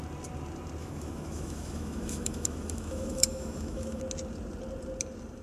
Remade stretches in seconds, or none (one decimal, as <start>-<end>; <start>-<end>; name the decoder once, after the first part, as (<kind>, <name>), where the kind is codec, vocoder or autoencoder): 0.8-4.0 (autoencoder, DAC-VAE)